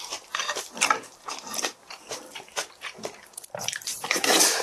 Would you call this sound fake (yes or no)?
yes